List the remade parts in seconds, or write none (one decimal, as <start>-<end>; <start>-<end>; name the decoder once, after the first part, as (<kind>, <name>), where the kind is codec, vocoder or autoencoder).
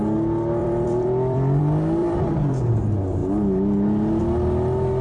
0.6-1.6 (vocoder, BigVGAN v2); 2.0-2.7